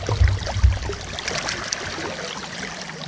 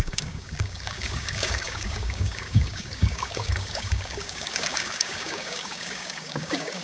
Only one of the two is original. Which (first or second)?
first